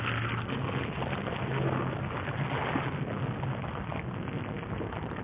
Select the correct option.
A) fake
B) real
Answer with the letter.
B